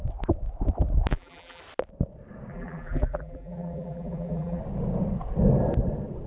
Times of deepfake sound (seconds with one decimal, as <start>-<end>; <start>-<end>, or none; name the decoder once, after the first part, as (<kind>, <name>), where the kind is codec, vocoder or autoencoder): 1.1-1.6 (vocoder, BigVGAN v2); 2.5-4.6